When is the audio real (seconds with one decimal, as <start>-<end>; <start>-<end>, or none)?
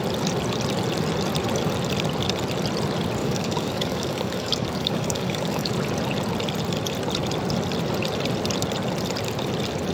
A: 0.0-3.2; 5.7-9.9